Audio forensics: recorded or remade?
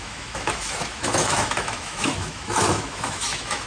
remade